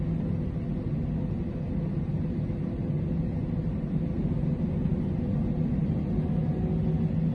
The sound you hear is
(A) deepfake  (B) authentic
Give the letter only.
B